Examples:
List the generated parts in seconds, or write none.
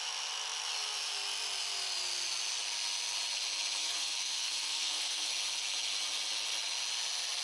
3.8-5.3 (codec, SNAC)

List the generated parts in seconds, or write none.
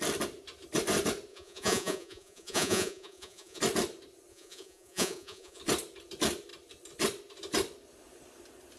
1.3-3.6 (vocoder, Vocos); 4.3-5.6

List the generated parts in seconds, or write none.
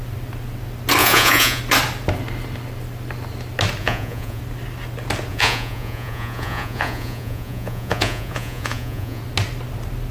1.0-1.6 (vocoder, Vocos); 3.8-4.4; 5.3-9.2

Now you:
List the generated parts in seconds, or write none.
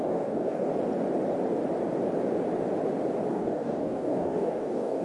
0.0-0.7 (codec, DAC); 3.3-5.0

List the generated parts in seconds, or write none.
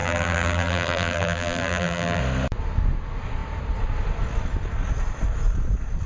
0.0-2.2 (vocoder, BigVGAN v2)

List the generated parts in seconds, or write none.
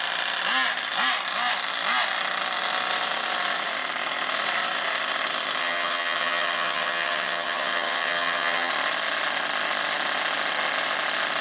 5.6-8.7 (vocoder, HiFi-GAN)